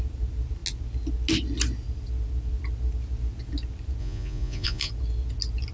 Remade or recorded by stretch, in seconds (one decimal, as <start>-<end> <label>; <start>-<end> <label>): 0.0-4.0 recorded; 4.0-4.9 remade; 4.9-5.7 recorded

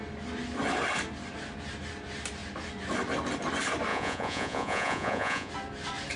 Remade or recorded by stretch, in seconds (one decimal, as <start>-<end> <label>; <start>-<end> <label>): 0.0-3.9 recorded; 3.9-5.5 remade; 5.5-6.2 recorded

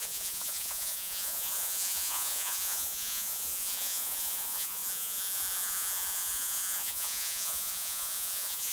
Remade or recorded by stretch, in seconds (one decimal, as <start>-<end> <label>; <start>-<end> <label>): 0.0-8.7 remade